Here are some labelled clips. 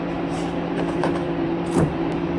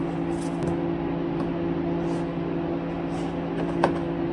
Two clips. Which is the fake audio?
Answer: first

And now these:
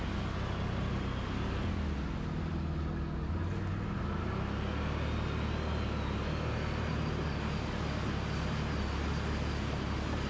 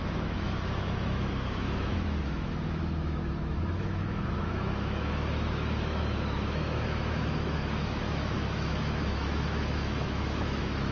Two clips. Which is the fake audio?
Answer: second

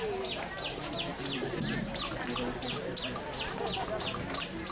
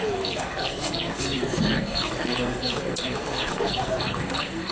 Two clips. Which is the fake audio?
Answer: second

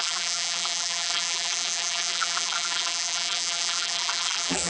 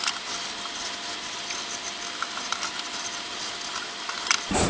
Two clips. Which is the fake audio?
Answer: first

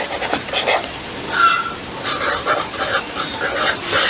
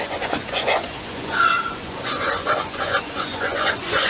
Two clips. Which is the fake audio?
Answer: second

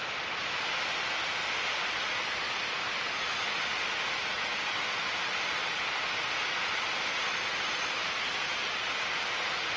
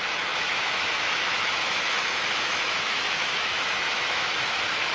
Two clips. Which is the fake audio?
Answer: second